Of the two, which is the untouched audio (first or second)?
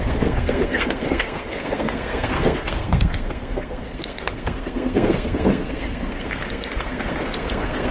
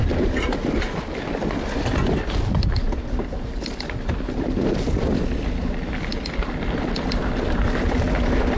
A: second